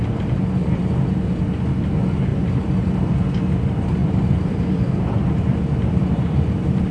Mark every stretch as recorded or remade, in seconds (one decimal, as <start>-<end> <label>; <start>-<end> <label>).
0.0-0.6 recorded; 0.6-1.4 remade; 1.4-2.3 recorded; 2.3-3.1 remade; 3.1-4.0 recorded; 4.0-6.9 remade